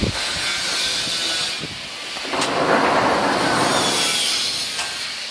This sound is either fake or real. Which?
real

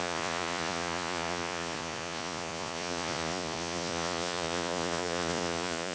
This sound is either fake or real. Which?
fake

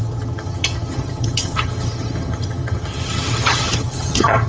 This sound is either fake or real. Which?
fake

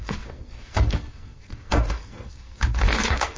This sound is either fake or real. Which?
fake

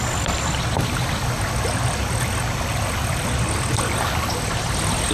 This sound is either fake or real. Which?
real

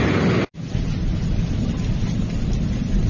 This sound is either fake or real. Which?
real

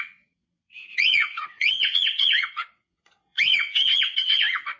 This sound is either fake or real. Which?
fake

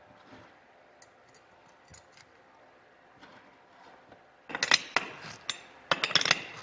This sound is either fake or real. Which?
real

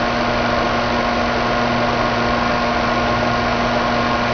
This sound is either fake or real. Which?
real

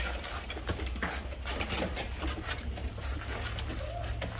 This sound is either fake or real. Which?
real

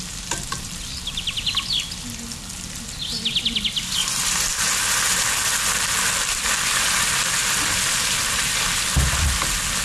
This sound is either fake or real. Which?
real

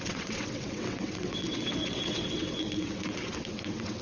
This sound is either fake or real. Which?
fake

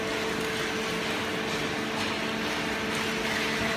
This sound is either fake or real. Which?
real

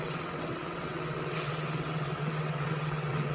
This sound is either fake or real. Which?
fake